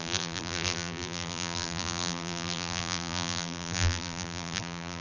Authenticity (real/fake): fake